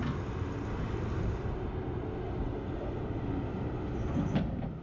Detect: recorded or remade recorded